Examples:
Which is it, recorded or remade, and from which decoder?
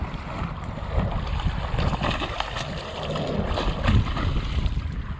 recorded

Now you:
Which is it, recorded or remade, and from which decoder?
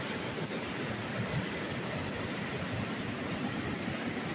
recorded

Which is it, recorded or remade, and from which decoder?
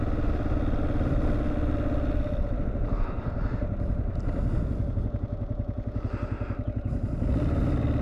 recorded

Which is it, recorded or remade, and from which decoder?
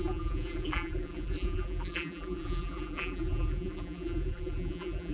remade, vocoder, BigVGAN v2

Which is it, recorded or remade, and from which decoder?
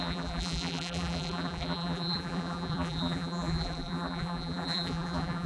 remade, vocoder, BigVGAN v2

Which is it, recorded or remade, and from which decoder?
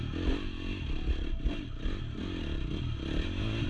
recorded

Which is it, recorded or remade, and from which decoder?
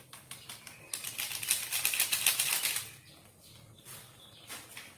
recorded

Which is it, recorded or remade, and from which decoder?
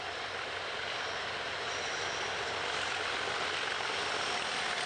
recorded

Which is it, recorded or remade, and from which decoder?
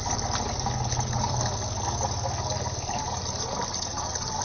recorded